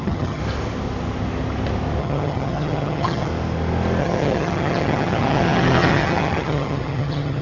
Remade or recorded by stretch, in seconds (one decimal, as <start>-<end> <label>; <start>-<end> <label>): 0.0-0.4 remade; 0.4-2.0 recorded; 2.0-3.3 remade; 3.3-4.0 recorded; 4.0-7.4 remade